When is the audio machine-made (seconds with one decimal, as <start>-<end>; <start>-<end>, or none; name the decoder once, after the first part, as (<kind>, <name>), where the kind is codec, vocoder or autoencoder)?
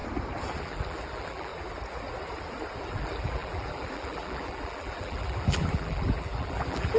0.6-1.5 (vocoder, BigVGAN v2); 2.8-7.0